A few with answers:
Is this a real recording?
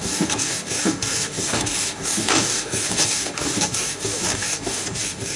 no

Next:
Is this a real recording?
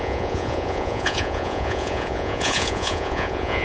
no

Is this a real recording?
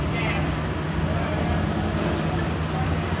yes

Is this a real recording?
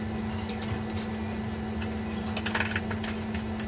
yes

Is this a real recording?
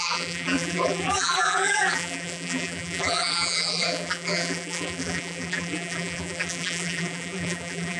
no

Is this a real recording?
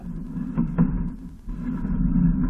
yes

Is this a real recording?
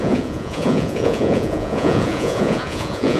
no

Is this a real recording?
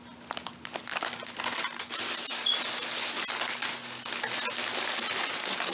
yes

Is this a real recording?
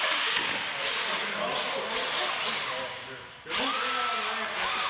yes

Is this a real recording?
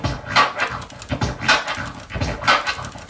yes